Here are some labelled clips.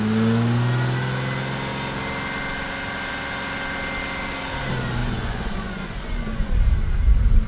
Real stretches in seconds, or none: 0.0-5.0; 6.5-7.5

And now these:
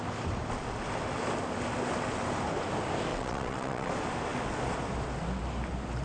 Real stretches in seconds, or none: 0.0-3.1; 3.9-6.0